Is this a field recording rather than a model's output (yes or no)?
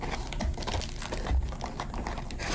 yes